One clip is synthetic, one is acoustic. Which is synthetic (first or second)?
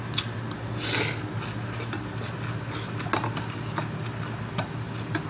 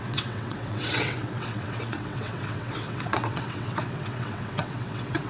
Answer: second